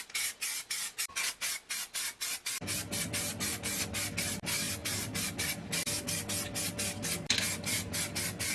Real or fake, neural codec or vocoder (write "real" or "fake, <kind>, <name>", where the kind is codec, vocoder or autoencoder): real